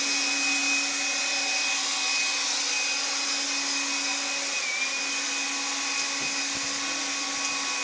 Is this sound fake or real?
real